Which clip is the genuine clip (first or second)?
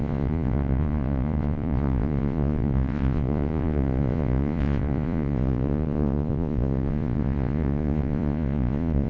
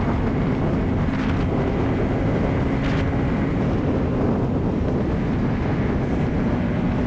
second